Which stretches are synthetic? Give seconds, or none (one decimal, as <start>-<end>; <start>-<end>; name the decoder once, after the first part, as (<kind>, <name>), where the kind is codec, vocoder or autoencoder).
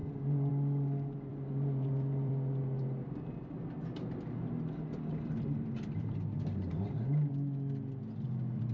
1.3-2.3 (vocoder, BigVGAN v2); 5.1-7.3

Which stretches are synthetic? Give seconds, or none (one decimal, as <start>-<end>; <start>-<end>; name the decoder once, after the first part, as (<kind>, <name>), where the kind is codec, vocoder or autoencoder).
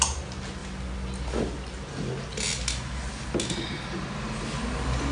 none